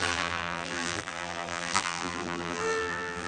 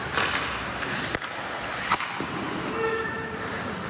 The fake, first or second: first